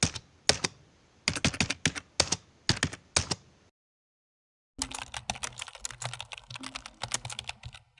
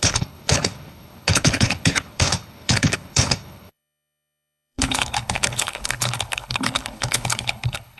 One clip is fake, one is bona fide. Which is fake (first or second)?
second